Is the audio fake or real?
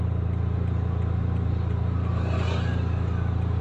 real